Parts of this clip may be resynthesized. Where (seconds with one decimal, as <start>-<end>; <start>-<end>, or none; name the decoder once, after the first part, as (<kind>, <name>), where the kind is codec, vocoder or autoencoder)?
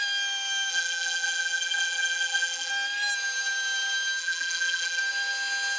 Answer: 0.7-2.7 (vocoder, BigVGAN v2); 4.2-5.0